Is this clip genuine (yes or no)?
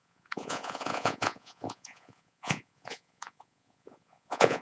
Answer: no